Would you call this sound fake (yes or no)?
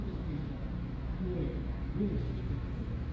yes